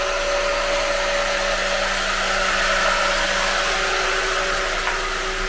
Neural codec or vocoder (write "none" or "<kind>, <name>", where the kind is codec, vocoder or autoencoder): none